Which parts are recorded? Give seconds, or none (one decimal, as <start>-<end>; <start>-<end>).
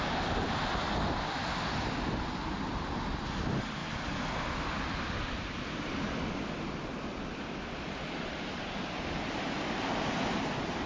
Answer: 0.0-10.9